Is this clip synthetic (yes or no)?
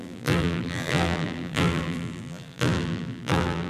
yes